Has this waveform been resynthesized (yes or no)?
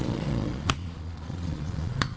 yes